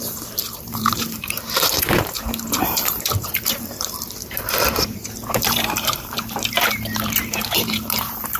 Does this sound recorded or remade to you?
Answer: remade